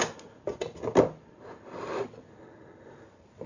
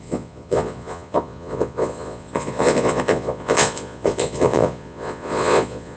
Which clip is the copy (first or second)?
second